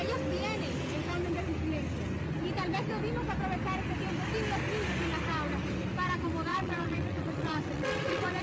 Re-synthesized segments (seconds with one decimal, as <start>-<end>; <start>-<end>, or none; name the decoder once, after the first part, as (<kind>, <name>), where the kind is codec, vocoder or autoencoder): 6.5-8.4 (vocoder, WaveNeXt)